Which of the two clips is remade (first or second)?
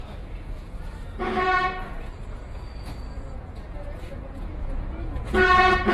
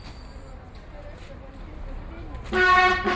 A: first